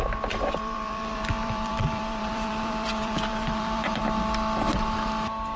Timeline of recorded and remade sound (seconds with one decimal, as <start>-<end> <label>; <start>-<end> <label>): 0.0-0.6 recorded; 0.6-4.0 remade; 4.0-5.6 recorded